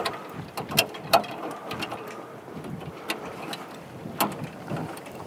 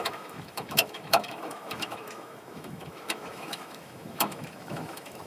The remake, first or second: second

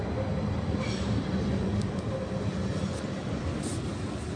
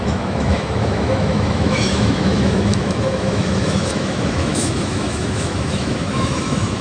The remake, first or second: second